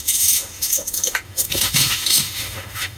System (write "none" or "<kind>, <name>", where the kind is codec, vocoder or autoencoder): autoencoder, DAC-VAE